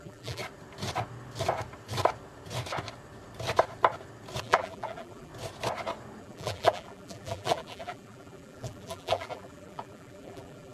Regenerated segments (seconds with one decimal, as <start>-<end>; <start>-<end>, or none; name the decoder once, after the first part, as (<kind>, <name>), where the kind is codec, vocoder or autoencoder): 0.0-0.4 (vocoder, BigVGAN v2); 4.4-5.3; 6.2-10.7